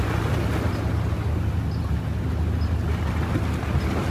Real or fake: real